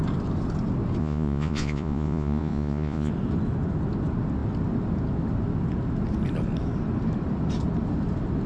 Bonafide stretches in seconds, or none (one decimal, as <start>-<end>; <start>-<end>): 0.0-1.0; 3.1-8.5